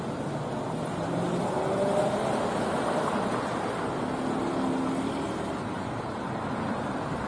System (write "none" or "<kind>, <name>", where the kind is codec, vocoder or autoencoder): none